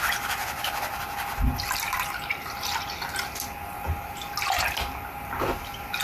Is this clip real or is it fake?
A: real